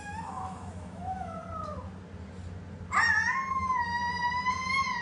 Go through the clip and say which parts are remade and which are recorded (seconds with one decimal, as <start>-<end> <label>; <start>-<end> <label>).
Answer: 0.0-1.4 remade; 1.4-3.5 recorded; 3.5-4.0 remade; 4.0-5.0 recorded